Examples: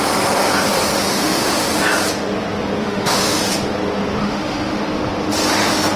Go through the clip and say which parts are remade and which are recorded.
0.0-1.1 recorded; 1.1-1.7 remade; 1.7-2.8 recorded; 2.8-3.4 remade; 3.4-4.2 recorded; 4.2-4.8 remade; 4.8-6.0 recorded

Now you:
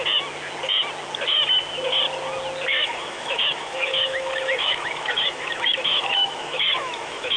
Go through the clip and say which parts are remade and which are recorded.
0.0-2.7 recorded; 2.7-7.4 remade

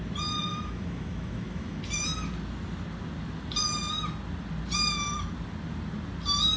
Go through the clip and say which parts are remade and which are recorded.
0.0-0.5 recorded; 0.5-1.8 remade; 1.8-6.6 recorded

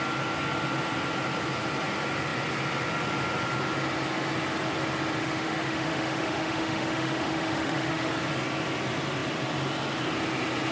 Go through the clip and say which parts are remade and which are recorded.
0.0-5.2 recorded; 5.2-8.1 remade; 8.1-10.7 recorded

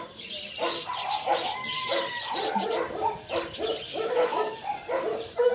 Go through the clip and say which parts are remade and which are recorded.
0.0-3.9 recorded; 3.9-4.6 remade; 4.6-5.5 recorded

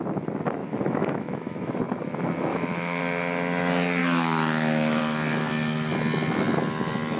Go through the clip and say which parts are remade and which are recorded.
0.0-0.6 recorded; 0.6-1.7 remade; 1.7-2.5 recorded; 2.5-3.0 remade; 3.0-4.0 recorded; 4.0-5.0 remade; 5.0-7.2 recorded